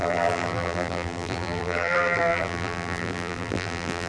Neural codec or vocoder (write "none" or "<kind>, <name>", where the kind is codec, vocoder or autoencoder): vocoder, BigVGAN v2